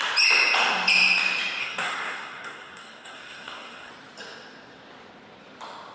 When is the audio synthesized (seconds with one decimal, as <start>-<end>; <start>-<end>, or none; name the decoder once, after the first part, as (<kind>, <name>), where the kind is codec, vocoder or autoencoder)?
1.6-3.9 (codec, SNAC)